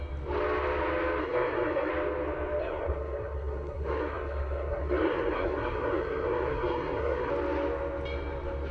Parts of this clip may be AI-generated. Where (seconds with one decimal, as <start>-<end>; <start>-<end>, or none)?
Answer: 1.2-1.9; 2.6-7.3